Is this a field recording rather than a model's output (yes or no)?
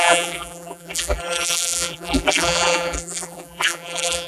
no